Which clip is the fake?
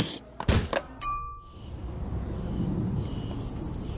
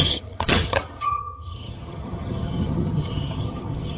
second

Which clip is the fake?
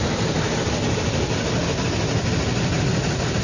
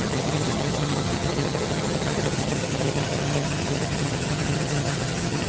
second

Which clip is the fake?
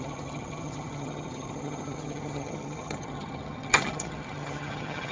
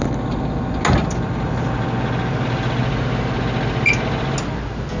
first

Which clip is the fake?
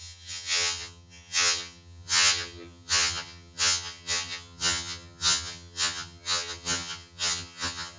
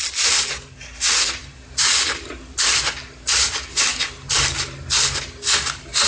first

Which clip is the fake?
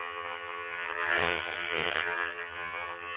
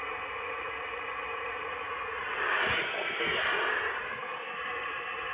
first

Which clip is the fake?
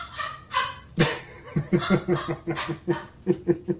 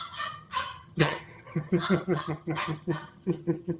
second